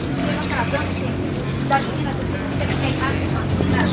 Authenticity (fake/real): real